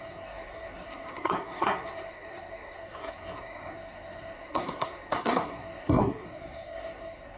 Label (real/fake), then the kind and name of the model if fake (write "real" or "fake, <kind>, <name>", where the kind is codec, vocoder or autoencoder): fake, codec, SNAC